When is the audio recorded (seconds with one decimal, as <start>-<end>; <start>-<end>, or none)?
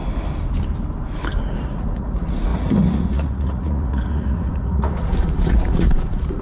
0.0-1.4